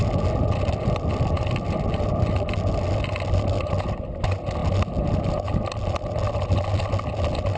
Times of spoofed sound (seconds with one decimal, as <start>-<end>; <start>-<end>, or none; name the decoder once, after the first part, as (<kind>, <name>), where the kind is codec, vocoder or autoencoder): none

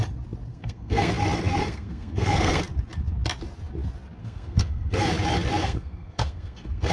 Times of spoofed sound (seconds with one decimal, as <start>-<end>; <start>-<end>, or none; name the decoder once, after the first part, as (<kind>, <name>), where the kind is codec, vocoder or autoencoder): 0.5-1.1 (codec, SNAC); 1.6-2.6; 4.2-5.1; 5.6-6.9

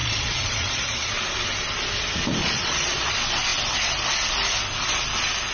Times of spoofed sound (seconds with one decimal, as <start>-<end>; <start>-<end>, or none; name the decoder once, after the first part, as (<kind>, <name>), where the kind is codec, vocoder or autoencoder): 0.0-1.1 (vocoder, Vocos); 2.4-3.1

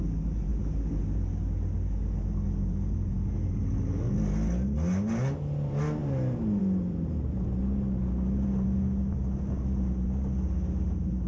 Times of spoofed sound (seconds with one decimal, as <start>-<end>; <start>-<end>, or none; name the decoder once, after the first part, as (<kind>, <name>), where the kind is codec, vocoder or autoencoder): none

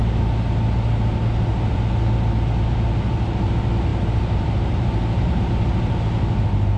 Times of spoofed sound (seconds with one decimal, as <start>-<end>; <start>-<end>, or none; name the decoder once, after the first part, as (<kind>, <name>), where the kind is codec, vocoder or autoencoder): 3.9-5.5 (vocoder, BigVGAN v2)